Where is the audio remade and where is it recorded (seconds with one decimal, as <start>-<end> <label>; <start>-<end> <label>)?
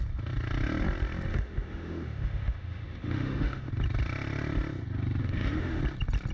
0.0-1.3 recorded; 1.3-3.7 remade; 3.7-5.2 recorded; 5.2-5.8 remade; 5.8-6.3 recorded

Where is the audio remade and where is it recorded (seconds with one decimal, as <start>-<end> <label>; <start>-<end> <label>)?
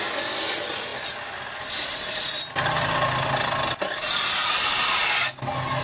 0.0-5.8 recorded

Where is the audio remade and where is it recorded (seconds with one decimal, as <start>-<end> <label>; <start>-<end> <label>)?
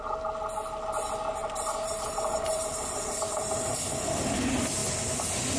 0.0-1.4 recorded; 1.4-3.8 remade; 3.8-5.6 recorded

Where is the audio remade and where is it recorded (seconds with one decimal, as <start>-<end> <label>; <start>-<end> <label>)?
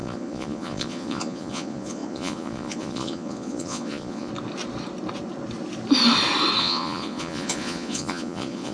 0.0-4.3 remade; 4.3-6.6 recorded; 6.6-8.7 remade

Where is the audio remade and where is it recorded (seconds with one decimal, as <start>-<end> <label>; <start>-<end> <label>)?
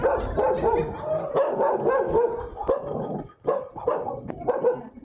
0.0-5.0 recorded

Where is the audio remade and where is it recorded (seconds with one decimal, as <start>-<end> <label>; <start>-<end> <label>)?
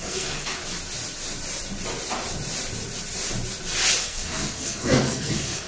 0.0-0.6 remade; 0.6-4.0 recorded; 4.0-5.7 remade